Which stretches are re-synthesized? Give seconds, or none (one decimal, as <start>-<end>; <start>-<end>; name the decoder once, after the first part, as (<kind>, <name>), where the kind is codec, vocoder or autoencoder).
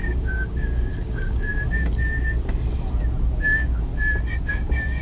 0.0-1.5 (codec, DAC); 3.4-3.9; 4.5-5.0